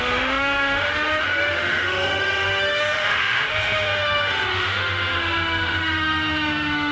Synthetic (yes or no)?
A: yes